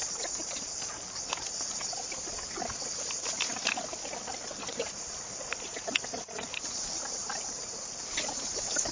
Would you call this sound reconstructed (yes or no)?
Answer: no